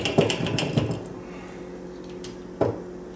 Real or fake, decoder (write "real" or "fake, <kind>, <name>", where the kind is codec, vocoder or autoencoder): real